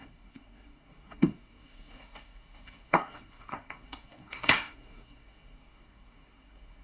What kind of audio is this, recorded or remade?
remade